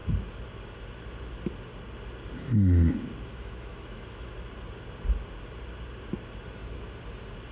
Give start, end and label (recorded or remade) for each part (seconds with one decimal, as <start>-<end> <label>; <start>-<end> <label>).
0.0-3.3 recorded; 3.3-4.3 remade; 4.3-7.5 recorded